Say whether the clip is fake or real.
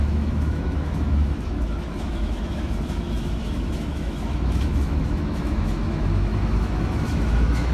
fake